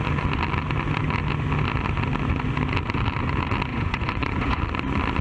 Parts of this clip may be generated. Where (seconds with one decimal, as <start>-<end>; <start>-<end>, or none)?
3.7-4.6